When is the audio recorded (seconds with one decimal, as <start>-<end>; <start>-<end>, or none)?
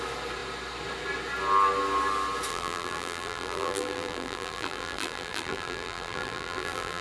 0.0-2.5